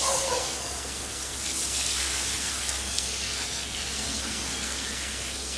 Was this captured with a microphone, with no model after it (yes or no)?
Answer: no